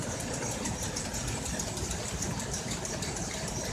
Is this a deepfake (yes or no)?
yes